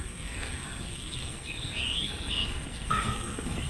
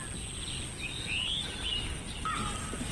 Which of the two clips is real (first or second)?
second